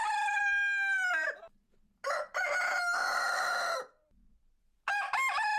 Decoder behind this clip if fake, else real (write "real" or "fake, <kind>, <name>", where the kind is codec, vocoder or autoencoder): real